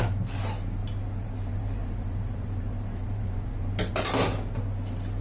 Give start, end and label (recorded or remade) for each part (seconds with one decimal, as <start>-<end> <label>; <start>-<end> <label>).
0.0-0.8 recorded; 0.8-3.9 remade; 3.9-5.2 recorded